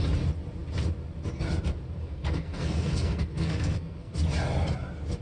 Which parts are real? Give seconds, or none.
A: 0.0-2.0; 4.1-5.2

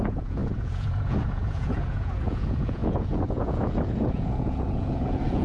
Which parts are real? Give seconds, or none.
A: none